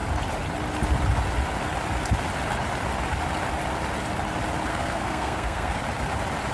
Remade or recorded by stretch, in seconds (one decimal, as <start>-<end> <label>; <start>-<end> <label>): 0.0-4.7 recorded; 4.7-5.8 remade; 5.8-6.5 recorded